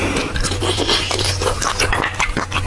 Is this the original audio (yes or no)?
yes